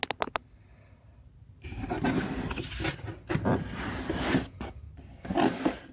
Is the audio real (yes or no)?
yes